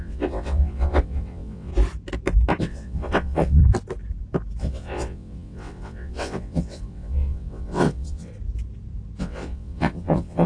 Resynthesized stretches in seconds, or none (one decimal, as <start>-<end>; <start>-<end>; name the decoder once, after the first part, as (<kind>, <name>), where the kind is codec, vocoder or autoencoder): 0.0-1.7 (vocoder, WaveNeXt); 2.6-3.6; 4.6-8.3; 9.2-10.5